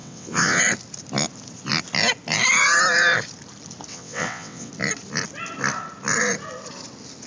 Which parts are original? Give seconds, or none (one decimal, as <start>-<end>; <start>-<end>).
0.6-3.9; 4.7-7.3